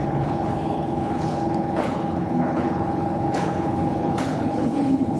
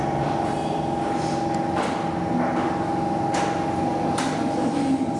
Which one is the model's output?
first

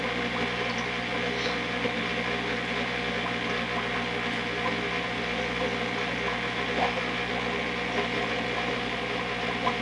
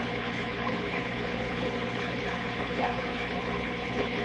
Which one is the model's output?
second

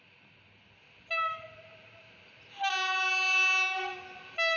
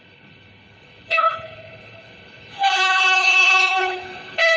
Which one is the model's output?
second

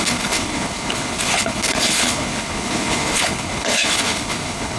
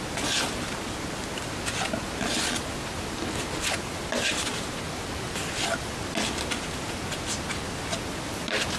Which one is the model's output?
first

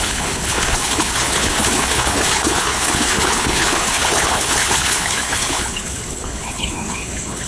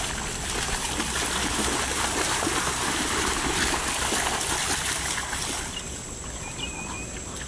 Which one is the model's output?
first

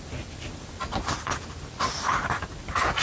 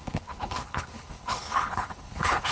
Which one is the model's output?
second